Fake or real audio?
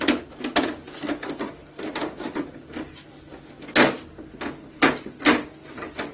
real